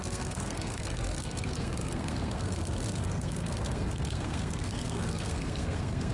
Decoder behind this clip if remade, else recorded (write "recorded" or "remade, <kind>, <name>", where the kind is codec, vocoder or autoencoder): remade, codec, SNAC